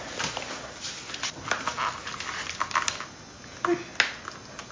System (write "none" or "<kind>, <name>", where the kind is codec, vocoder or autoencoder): none